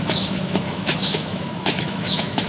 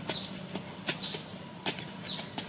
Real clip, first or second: second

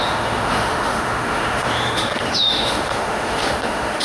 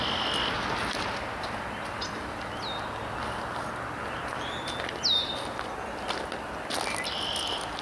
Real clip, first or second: second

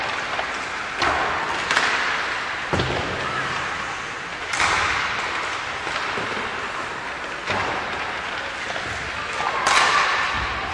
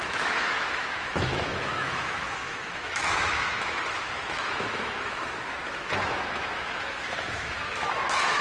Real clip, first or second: first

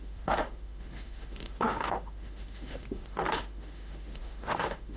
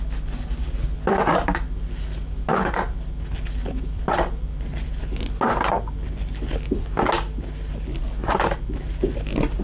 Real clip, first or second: second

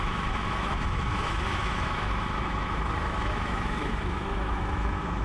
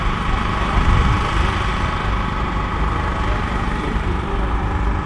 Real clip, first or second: second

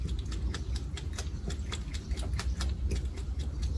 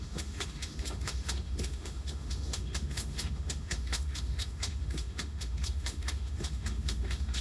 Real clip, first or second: first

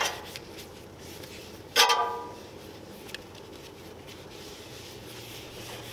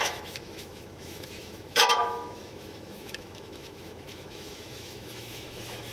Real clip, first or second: first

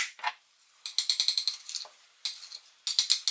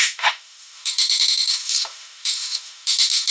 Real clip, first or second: first